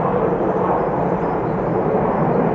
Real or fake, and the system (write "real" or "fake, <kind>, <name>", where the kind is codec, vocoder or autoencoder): fake, vocoder, BigVGAN v2